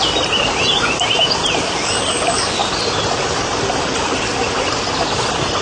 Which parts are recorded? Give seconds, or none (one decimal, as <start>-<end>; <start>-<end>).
0.0-2.6; 4.0-5.6